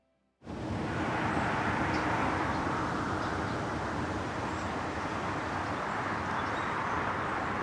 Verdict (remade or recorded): recorded